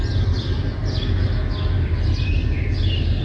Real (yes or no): yes